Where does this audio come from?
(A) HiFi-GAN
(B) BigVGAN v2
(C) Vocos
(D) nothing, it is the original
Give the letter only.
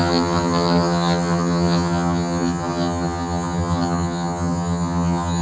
A